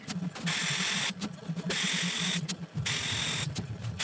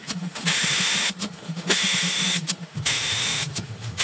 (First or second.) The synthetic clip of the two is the second